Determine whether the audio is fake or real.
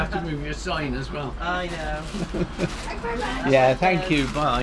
real